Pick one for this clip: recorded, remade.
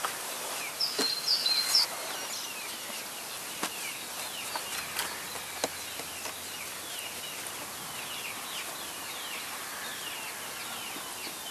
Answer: recorded